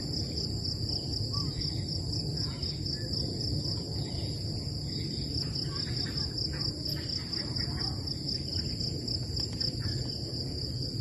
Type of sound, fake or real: real